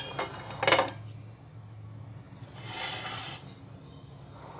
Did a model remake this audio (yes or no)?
no